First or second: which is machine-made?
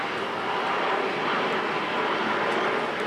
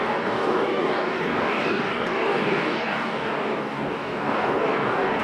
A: second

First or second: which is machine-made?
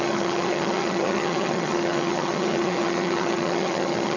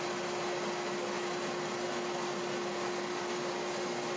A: first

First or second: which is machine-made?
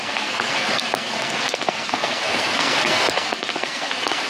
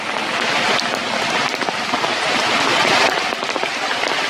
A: first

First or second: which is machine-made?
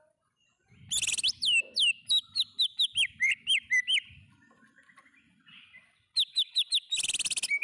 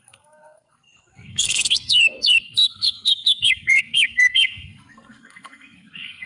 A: second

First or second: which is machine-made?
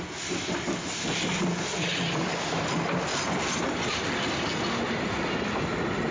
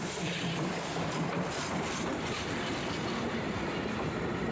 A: second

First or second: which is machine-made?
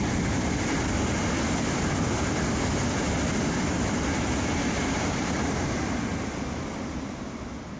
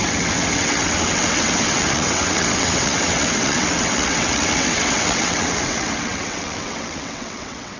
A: second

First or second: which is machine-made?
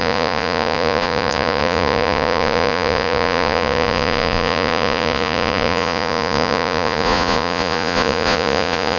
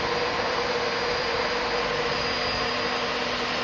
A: first